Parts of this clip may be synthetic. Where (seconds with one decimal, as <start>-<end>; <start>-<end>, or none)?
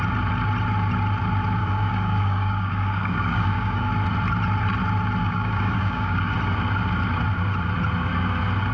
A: 1.6-3.9; 5.2-6.3